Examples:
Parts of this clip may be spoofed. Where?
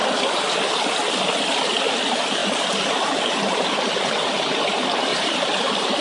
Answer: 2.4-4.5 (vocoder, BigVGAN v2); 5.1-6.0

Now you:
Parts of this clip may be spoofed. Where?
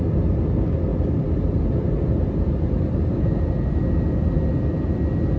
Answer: 0.9-3.8 (vocoder, BigVGAN v2)